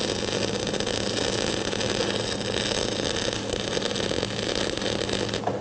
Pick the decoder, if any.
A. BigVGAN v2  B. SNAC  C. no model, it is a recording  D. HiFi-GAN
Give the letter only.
C